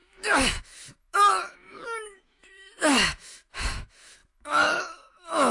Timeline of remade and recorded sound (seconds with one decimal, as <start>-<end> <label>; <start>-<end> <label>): 0.0-5.5 remade